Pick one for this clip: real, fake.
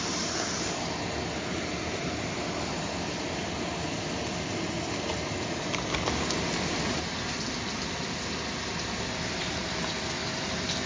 real